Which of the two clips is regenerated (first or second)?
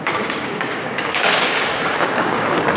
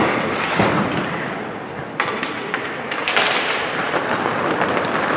first